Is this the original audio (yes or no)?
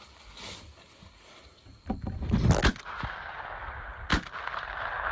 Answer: yes